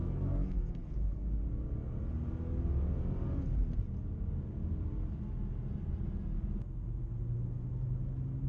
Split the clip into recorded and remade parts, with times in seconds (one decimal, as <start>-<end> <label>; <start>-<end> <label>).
0.0-1.4 remade; 1.4-8.5 recorded